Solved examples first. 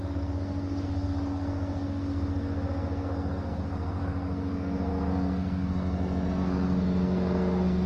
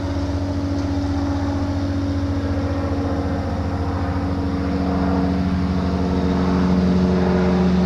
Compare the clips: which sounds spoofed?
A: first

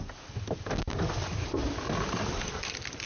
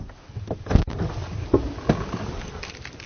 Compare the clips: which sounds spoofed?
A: first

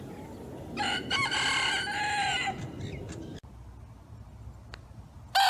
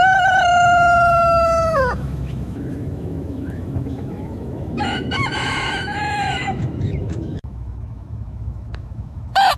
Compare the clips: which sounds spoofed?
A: second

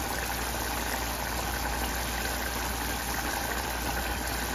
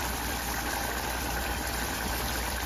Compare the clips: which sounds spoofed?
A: second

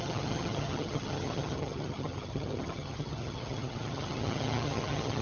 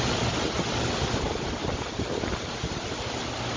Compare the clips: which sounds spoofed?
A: first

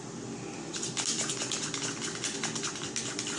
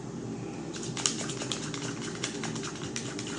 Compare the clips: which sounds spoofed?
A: second